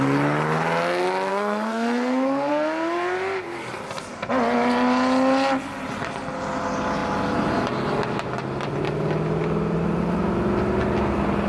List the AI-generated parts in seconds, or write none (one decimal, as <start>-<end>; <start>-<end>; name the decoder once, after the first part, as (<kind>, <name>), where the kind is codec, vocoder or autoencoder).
1.3-2.5 (codec, SNAC)